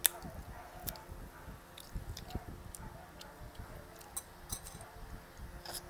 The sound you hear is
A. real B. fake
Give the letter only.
A